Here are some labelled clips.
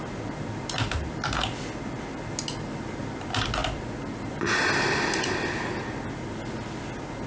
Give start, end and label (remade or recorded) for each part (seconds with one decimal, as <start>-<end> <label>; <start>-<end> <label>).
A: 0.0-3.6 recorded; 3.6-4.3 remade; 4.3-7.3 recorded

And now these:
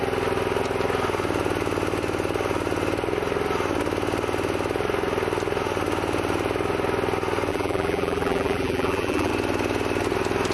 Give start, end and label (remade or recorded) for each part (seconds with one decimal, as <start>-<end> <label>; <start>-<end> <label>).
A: 0.0-7.5 recorded; 7.5-9.3 remade; 9.3-10.5 recorded

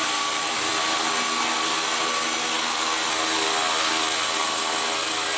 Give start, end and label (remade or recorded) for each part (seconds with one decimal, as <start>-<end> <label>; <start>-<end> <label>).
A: 0.0-5.4 recorded